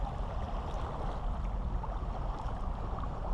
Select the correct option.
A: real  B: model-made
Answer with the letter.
A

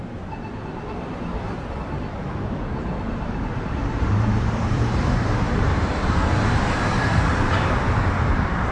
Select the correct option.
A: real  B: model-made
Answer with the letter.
B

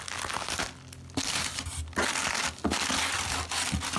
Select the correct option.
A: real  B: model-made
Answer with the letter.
A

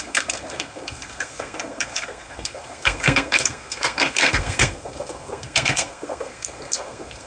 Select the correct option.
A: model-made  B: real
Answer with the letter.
A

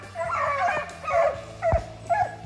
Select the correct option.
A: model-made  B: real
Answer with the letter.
B